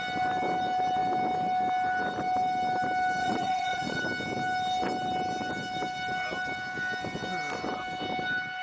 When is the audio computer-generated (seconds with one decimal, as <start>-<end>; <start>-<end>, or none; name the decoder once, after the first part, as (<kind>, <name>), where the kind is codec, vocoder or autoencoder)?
3.2-4.0 (vocoder, Vocos)